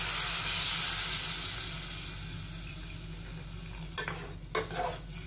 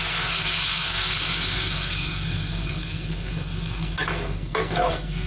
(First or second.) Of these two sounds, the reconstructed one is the second